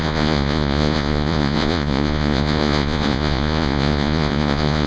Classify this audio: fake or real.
fake